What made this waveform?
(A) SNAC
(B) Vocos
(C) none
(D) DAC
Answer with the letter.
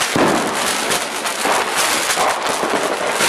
C